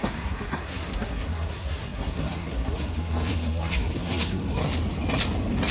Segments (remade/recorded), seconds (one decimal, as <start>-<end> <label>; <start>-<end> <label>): 0.0-4.6 remade; 4.6-5.7 recorded